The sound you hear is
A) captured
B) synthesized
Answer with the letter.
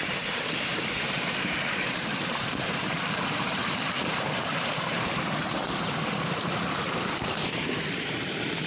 B